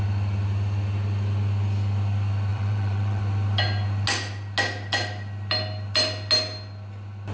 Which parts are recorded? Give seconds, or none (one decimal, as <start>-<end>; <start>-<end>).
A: 0.0-2.5; 3.2-7.3